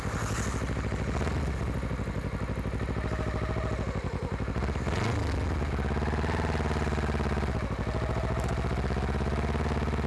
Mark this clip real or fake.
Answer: real